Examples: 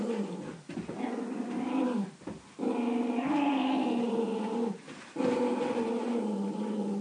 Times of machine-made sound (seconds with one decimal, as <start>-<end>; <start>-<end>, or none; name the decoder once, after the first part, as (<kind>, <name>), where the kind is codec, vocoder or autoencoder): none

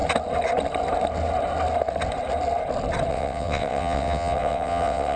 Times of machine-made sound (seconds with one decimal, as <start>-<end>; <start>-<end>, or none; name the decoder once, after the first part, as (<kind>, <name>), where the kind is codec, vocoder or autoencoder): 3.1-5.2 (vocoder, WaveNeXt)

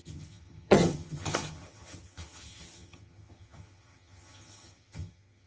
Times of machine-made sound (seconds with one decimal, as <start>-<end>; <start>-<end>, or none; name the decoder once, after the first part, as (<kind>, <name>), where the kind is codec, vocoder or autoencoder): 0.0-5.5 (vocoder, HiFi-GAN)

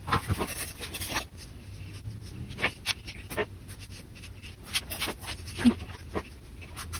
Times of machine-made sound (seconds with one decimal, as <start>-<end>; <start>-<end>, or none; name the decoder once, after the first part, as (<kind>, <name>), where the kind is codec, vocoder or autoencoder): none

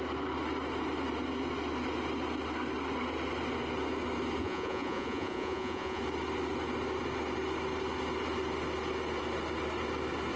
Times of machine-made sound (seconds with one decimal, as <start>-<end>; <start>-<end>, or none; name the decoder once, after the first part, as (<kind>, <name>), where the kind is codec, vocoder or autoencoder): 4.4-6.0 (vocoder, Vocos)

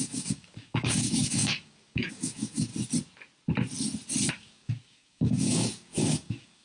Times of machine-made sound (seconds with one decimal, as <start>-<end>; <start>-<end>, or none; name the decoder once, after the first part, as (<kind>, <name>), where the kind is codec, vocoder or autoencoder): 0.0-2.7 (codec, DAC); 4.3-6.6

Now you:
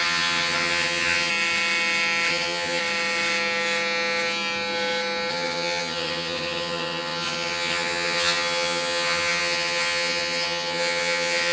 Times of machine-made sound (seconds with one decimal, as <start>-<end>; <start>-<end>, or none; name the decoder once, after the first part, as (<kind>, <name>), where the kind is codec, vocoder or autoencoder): 0.0-1.3 (vocoder, HiFi-GAN); 2.3-2.8; 5.3-11.5